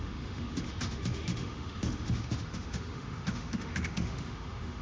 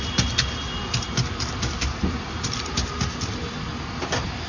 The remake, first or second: first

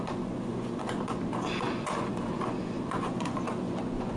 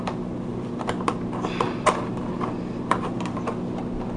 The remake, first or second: first